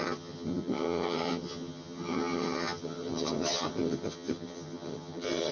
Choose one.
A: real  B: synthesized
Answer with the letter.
B